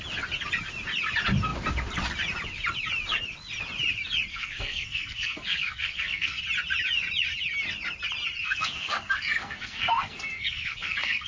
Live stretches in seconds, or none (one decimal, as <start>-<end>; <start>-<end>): 0.0-4.3; 6.4-8.4

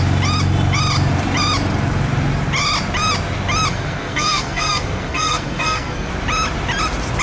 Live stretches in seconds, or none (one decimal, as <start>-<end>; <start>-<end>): 0.0-3.7; 6.1-7.2

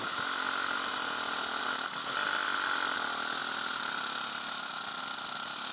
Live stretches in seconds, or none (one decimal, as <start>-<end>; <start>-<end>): 0.0-5.7

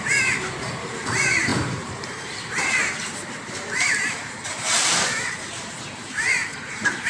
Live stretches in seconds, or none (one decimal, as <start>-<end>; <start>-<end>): none

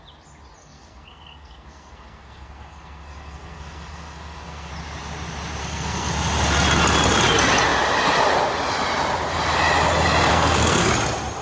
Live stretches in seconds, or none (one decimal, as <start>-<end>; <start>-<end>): 0.0-0.6; 4.7-5.6; 6.1-10.3; 10.9-11.4

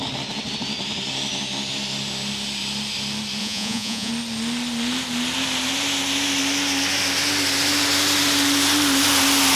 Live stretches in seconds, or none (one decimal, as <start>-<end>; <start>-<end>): 0.0-3.4; 4.1-9.6

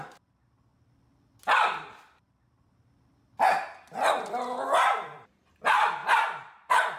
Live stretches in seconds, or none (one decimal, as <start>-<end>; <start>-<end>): 0.7-2.2